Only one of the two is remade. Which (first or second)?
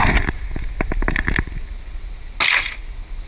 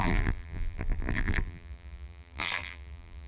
second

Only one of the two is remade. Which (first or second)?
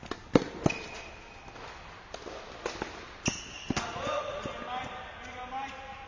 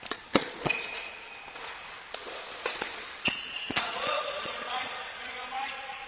second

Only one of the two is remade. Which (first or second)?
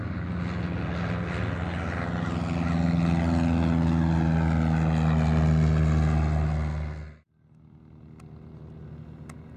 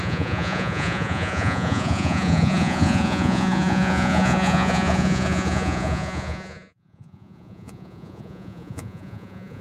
second